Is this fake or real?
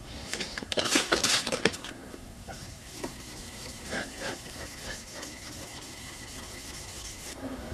fake